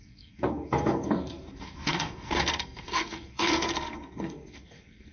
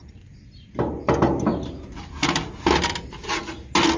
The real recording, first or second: second